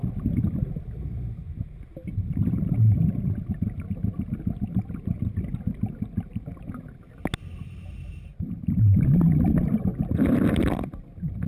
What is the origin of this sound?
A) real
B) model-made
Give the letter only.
A